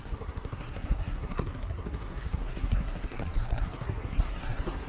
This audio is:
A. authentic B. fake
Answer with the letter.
B